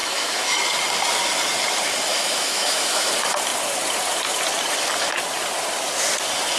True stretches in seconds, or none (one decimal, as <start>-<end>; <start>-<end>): 0.6-2.1; 3.1-6.6